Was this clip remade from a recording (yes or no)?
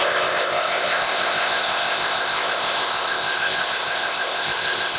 yes